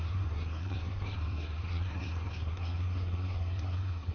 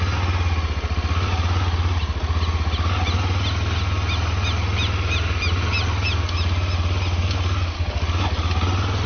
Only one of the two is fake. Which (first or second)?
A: first